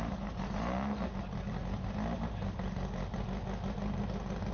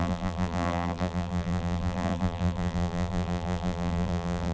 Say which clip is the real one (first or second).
first